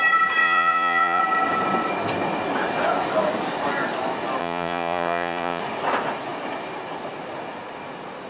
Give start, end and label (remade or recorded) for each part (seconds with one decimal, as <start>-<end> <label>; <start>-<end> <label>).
0.0-0.4 recorded; 0.4-1.2 remade; 1.2-4.4 recorded; 4.4-5.6 remade; 5.6-8.3 recorded